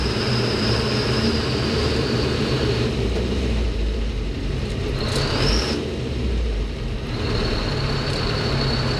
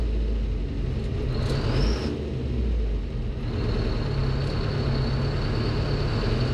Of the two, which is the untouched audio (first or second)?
second